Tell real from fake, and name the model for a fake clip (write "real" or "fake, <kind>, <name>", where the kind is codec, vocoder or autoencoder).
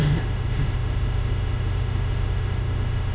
fake, autoencoder, DAC-VAE